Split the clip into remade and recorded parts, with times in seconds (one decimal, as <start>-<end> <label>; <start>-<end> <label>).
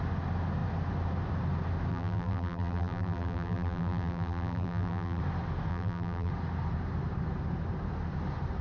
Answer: 0.0-1.9 recorded; 1.9-5.2 remade; 5.2-5.7 recorded; 5.7-6.3 remade; 6.3-8.6 recorded